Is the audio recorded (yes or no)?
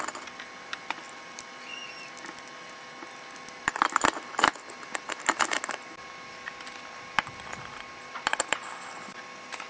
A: yes